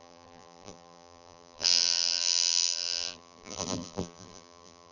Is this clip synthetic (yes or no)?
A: yes